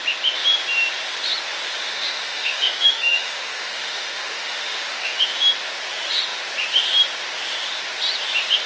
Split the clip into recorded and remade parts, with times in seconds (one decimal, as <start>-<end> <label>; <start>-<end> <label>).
0.0-1.9 recorded; 1.9-5.2 remade; 5.2-8.7 recorded